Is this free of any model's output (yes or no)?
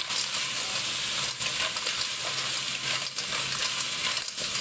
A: yes